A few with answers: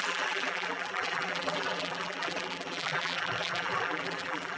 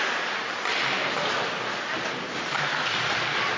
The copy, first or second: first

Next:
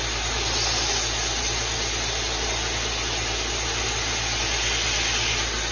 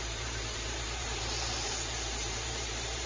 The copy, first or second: second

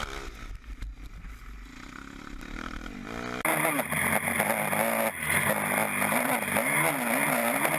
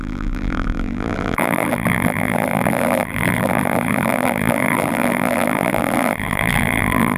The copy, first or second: second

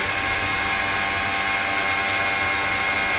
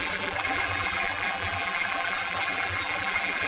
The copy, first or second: second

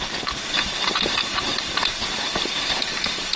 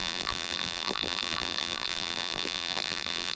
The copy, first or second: second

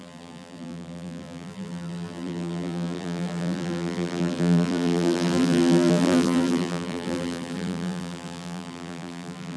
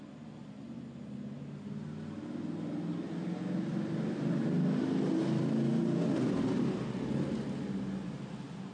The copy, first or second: first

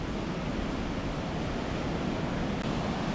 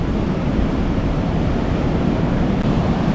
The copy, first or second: second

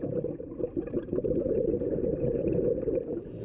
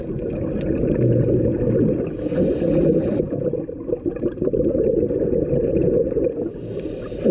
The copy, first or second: first